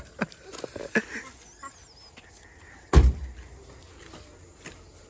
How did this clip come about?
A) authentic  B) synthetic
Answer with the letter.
A